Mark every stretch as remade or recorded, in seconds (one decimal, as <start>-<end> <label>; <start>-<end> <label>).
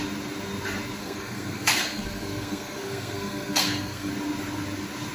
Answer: 0.0-1.0 recorded; 1.0-4.1 remade; 4.1-5.1 recorded